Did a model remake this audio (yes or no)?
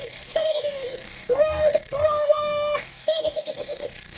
yes